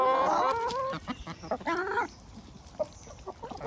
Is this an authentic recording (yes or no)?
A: yes